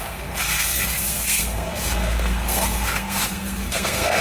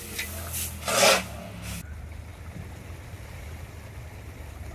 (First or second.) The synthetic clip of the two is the first